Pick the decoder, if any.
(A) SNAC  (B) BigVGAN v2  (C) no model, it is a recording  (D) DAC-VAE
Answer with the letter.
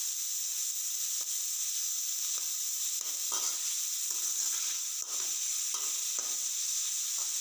C